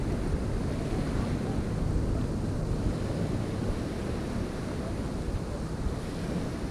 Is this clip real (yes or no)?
yes